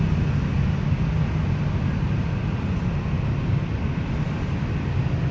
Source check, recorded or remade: recorded